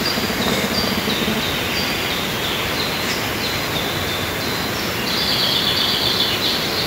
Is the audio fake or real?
real